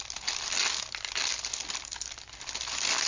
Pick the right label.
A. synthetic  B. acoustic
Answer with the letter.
B